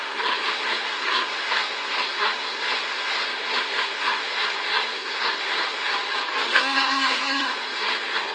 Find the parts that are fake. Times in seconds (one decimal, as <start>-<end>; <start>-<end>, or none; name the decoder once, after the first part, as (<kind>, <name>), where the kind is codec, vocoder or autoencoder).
0.0-5.9 (codec, SNAC); 6.5-8.3